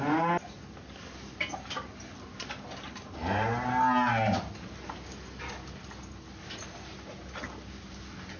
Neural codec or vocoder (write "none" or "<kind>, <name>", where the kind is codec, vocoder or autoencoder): none